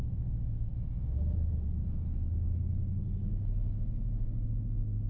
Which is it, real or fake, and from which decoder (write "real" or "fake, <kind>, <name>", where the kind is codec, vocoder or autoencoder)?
real